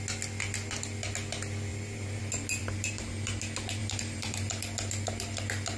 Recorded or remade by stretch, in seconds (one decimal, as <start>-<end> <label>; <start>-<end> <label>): 0.0-1.7 recorded; 1.7-2.2 remade; 2.2-2.6 recorded; 2.6-3.4 remade; 3.4-3.8 recorded; 3.8-4.5 remade; 4.5-5.8 recorded